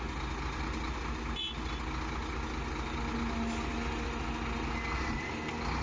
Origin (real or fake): real